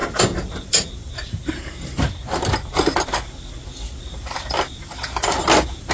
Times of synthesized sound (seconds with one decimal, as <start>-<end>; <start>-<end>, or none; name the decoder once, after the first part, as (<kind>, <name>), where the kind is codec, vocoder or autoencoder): none